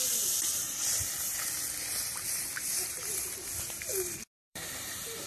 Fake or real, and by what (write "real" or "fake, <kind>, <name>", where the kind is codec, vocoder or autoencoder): fake, vocoder, BigVGAN v2